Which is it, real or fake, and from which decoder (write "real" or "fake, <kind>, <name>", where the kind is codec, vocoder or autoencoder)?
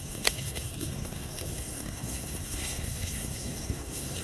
fake, codec, SNAC